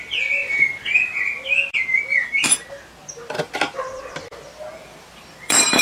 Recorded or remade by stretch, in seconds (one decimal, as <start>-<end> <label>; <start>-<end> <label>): 0.0-0.4 recorded; 0.4-1.2 remade; 1.2-4.8 recorded; 4.8-5.8 remade